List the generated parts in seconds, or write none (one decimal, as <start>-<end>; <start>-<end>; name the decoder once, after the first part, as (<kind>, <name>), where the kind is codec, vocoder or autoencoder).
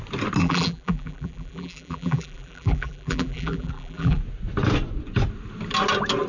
0.4-4.2 (vocoder, BigVGAN v2)